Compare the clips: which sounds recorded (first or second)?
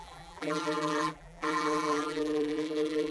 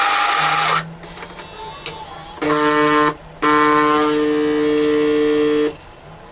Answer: second